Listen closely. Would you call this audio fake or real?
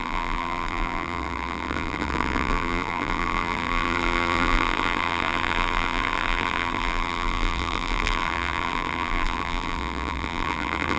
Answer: fake